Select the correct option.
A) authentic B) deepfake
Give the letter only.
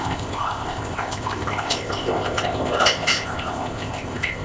B